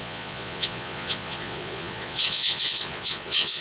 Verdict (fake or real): fake